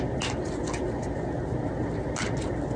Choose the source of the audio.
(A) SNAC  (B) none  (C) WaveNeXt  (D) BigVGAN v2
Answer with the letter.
B